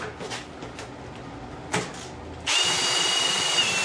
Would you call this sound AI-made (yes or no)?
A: no